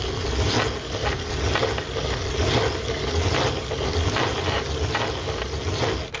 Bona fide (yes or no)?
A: yes